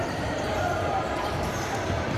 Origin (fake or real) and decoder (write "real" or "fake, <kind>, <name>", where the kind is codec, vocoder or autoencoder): fake, vocoder, BigVGAN v2